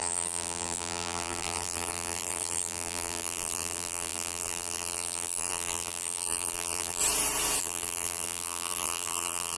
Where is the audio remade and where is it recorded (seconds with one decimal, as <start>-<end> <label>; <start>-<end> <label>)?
0.0-7.0 remade; 7.0-7.6 recorded; 7.6-9.6 remade